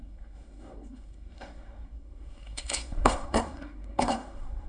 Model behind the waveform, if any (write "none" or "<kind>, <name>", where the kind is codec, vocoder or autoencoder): codec, SNAC